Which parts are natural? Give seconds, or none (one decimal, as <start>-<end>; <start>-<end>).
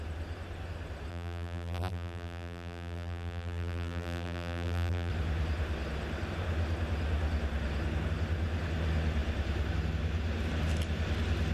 0.0-1.1; 5.1-11.5